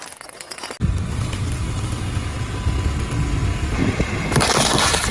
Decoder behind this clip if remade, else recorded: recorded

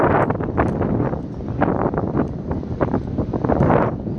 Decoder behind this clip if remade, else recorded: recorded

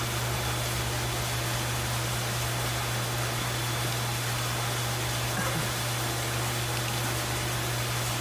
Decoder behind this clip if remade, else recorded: recorded